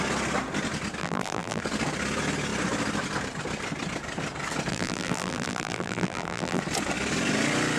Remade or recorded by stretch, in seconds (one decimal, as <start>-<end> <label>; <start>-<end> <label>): 0.0-1.0 recorded; 1.0-1.6 remade; 1.6-4.7 recorded; 4.7-6.6 remade; 6.6-7.8 recorded